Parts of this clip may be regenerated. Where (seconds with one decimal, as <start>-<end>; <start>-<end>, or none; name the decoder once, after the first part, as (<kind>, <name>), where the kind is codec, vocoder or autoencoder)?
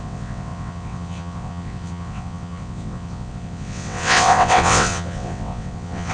0.0-6.1 (vocoder, WaveNeXt)